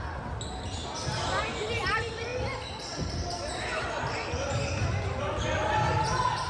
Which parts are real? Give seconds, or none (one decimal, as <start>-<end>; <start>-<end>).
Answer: 0.0-6.5